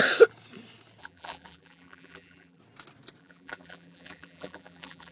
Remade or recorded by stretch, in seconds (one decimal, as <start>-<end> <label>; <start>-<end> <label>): 0.0-1.0 recorded; 1.0-2.6 remade; 2.6-3.2 recorded; 3.2-5.1 remade